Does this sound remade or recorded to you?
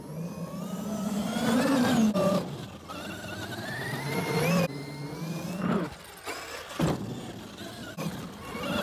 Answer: recorded